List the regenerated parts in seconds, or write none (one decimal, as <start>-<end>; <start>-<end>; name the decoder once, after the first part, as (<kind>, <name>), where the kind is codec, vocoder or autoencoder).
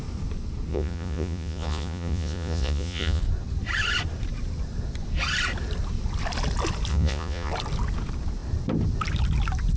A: 0.7-3.2 (vocoder, Vocos); 6.9-7.5